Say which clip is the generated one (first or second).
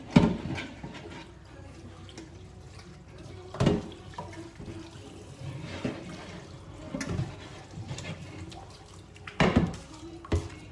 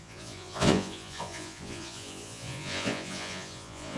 second